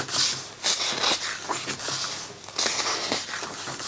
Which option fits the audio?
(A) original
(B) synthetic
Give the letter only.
A